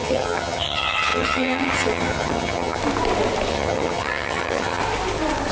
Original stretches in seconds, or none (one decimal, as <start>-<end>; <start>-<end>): 2.8-3.5; 4.8-5.5